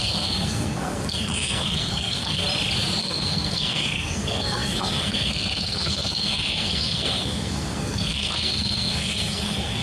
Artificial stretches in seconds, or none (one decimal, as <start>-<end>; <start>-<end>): 0.0-2.4; 3.0-9.8